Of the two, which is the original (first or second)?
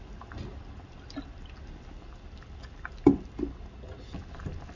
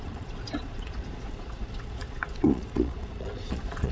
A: first